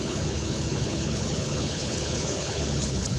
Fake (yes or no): yes